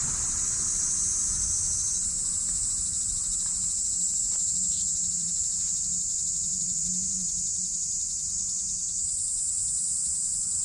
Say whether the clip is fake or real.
fake